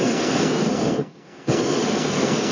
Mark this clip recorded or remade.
remade